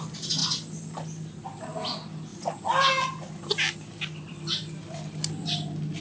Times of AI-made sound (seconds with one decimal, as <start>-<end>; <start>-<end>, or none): none